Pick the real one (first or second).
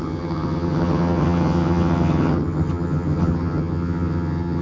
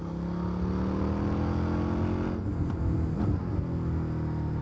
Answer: second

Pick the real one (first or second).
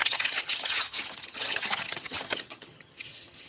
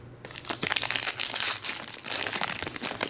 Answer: second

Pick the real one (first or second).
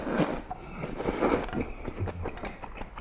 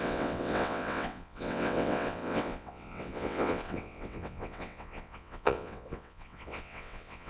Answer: first